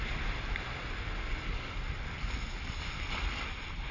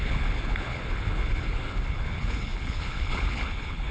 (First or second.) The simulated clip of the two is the second